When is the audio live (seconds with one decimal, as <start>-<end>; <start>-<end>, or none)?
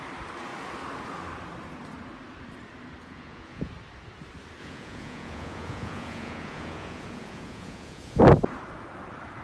0.0-3.0; 3.7-4.6; 8.2-9.4